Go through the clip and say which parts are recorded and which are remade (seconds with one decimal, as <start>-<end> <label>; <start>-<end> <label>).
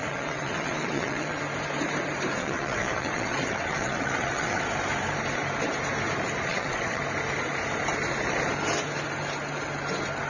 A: 0.0-1.4 remade; 1.4-2.4 recorded; 2.4-4.6 remade; 4.6-6.5 recorded; 6.5-7.0 remade; 7.0-10.3 recorded